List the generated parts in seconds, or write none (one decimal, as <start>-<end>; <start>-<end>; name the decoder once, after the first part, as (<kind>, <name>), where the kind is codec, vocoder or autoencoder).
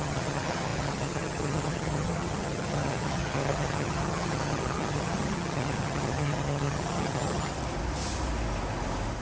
0.0-7.5 (vocoder, HiFi-GAN)